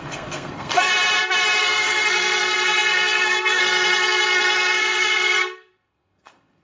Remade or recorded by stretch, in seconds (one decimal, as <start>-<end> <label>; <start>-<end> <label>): 0.0-0.9 remade; 0.9-1.6 recorded; 1.6-6.6 remade